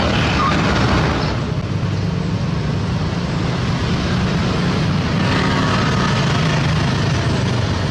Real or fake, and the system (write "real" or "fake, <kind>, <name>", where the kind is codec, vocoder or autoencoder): real